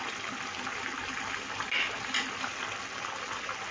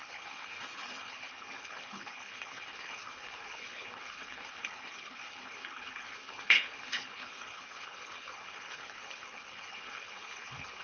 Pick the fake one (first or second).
second